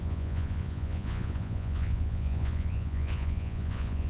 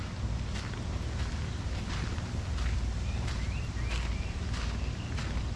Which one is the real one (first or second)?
second